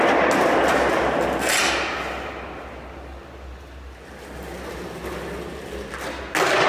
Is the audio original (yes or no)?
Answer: yes